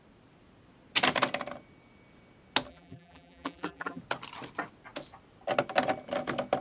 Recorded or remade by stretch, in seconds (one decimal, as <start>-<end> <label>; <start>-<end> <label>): 0.0-2.7 recorded; 2.7-4.0 remade; 4.0-6.6 recorded